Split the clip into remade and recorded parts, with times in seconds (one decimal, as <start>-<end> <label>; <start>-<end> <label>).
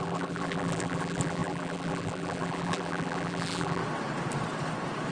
0.0-3.8 remade; 3.8-5.1 recorded